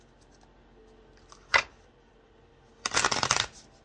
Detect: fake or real real